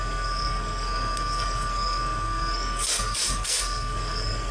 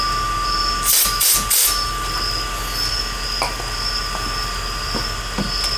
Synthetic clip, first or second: first